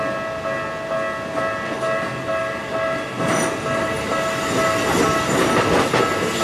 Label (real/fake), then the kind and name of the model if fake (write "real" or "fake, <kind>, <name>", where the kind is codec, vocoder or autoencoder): real